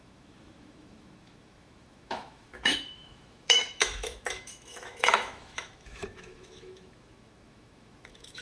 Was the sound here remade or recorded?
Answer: remade